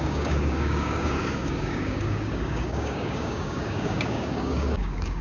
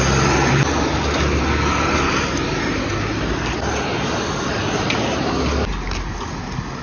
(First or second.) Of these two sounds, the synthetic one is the first